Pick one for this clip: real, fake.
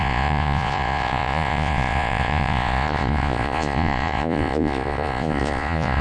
fake